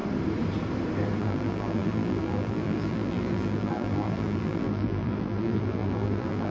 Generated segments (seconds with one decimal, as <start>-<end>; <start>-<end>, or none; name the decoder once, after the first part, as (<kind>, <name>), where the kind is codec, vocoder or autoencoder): 1.2-6.5 (vocoder, BigVGAN v2)